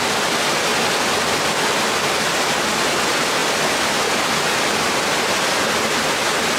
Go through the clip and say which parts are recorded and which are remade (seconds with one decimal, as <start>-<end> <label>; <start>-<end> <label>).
0.0-6.6 recorded

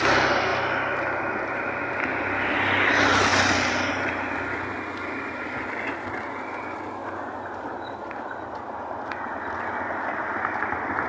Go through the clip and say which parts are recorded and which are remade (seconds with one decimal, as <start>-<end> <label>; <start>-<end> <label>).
0.0-0.5 recorded; 0.5-1.2 remade; 1.2-11.1 recorded

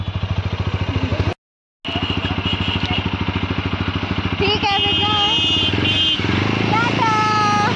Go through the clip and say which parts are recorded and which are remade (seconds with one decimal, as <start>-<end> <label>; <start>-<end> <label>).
0.0-7.8 recorded

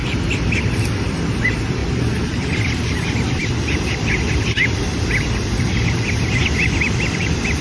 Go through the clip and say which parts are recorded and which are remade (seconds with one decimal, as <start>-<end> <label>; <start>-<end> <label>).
0.0-1.8 remade; 1.8-2.8 recorded; 2.8-7.6 remade

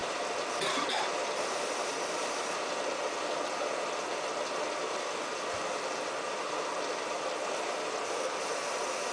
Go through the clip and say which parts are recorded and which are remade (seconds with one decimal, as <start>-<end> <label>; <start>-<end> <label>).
0.0-2.8 remade; 2.8-9.1 recorded

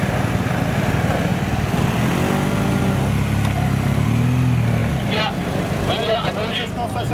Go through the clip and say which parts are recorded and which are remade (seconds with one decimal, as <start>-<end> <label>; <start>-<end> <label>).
0.0-7.1 recorded

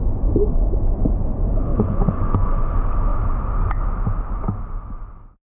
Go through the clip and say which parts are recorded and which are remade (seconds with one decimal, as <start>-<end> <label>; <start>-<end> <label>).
0.0-1.7 recorded; 1.7-2.7 remade; 2.7-5.5 recorded